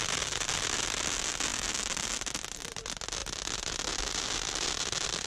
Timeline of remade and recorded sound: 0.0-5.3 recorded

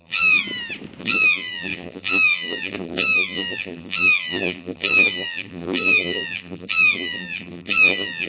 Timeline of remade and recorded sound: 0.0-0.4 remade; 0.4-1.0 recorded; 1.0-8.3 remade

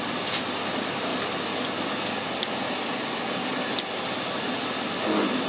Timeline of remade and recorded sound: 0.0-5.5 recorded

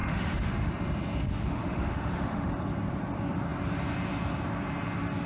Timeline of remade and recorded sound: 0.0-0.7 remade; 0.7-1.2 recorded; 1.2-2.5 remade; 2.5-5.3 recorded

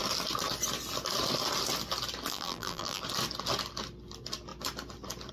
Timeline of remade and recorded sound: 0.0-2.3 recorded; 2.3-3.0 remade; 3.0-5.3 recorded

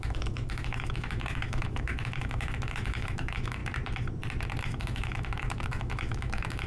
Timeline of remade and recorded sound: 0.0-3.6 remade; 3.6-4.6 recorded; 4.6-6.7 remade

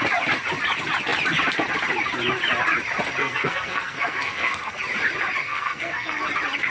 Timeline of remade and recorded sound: 0.0-3.2 recorded; 3.2-4.8 remade; 4.8-5.4 recorded; 5.4-6.2 remade; 6.2-6.7 recorded

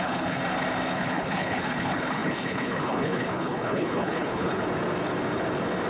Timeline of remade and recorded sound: 0.0-0.4 remade; 0.4-1.0 recorded; 1.0-4.6 remade; 4.6-5.9 recorded